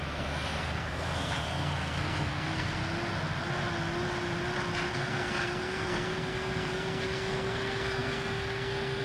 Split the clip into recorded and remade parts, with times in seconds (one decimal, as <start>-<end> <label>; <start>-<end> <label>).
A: 0.0-2.8 remade; 2.8-4.9 recorded; 4.9-9.0 remade